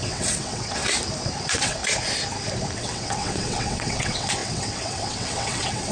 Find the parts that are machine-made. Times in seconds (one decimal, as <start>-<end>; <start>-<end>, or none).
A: 0.0-0.8; 1.4-1.8; 2.8-5.9